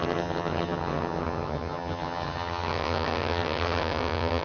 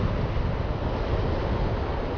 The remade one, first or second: first